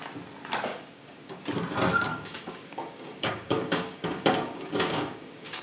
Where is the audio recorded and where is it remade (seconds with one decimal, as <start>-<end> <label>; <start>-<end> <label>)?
0.0-0.7 recorded; 0.7-1.4 remade; 1.4-2.1 recorded; 2.1-5.6 remade